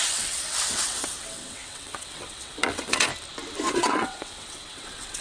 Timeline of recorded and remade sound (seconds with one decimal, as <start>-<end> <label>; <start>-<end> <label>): 0.0-3.1 remade; 3.1-3.7 recorded; 3.7-5.2 remade